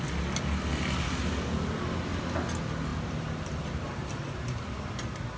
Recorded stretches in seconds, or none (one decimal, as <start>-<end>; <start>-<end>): 0.0-0.7; 1.3-2.9; 4.8-5.4